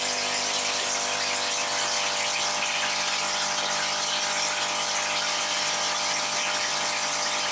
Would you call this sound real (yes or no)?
yes